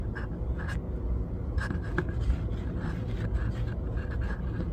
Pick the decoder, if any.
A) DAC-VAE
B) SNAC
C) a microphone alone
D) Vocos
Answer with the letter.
C